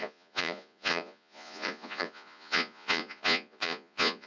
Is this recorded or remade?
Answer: remade